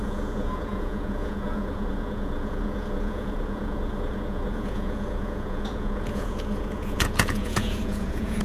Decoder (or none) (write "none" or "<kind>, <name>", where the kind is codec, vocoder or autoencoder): vocoder, Vocos